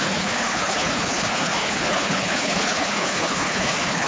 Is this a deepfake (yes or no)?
yes